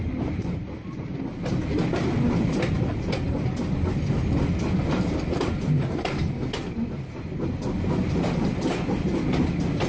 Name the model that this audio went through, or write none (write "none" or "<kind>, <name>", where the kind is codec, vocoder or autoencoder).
none